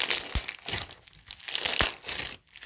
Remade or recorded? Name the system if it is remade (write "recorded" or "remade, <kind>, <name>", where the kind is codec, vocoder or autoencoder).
recorded